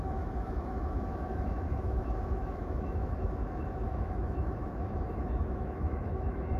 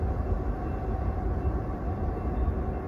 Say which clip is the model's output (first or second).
first